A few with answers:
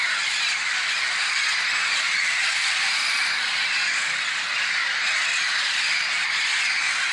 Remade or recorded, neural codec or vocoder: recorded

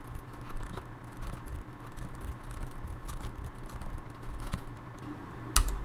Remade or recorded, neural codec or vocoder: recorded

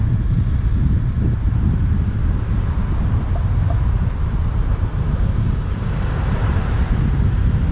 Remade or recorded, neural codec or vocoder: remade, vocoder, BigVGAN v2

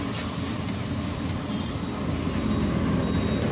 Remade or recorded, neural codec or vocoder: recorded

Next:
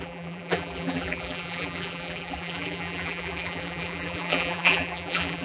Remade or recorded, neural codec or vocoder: remade, vocoder, BigVGAN v2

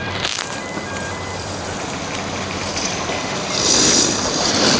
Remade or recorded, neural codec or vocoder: remade, vocoder, BigVGAN v2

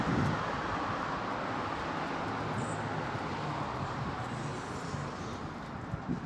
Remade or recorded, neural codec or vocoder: recorded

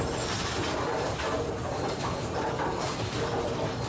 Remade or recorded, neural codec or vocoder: remade, vocoder, BigVGAN v2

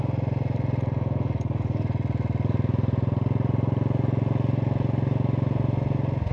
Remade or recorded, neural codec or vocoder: recorded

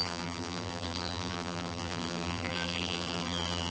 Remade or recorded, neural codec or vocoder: remade, vocoder, BigVGAN v2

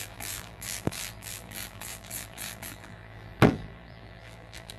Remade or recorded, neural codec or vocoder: remade, vocoder, BigVGAN v2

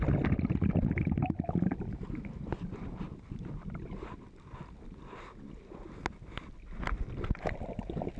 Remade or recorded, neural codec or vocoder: recorded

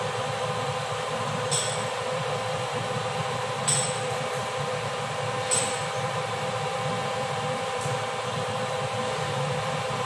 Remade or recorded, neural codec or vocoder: remade, vocoder, BigVGAN v2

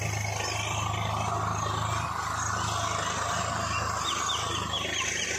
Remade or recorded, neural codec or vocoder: recorded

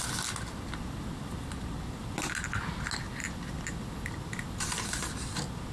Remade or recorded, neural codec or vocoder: recorded